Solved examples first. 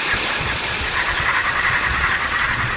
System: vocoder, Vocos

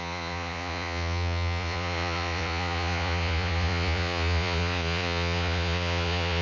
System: vocoder, Vocos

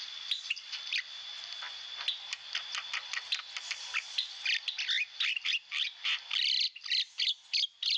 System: none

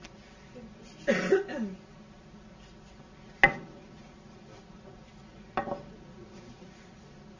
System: none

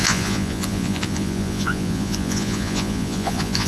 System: vocoder, Vocos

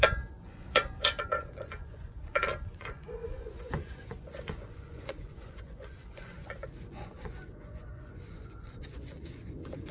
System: vocoder, Vocos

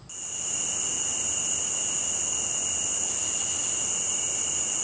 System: none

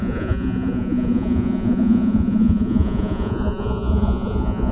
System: vocoder, Vocos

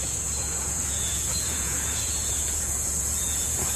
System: vocoder, Vocos